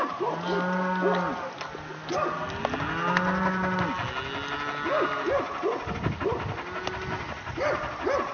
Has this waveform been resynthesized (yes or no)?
no